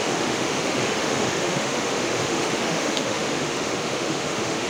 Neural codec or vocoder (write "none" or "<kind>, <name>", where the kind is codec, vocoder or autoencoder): autoencoder, DAC-VAE